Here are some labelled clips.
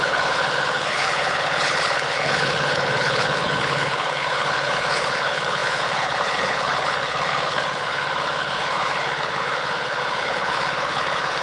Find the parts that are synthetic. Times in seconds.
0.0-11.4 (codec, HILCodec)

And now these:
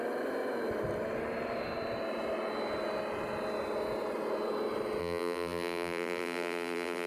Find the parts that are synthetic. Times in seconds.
5.0-7.1 (vocoder, BigVGAN v2)